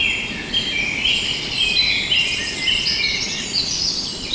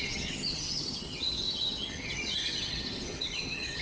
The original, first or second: first